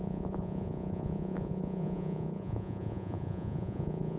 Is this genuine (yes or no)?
no